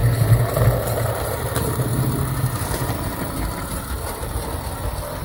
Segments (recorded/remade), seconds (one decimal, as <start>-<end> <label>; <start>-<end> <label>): 0.0-0.9 recorded; 0.9-1.9 remade; 1.9-5.2 recorded